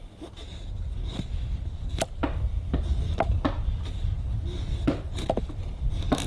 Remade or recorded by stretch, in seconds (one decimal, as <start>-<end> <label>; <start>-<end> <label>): 0.0-6.3 recorded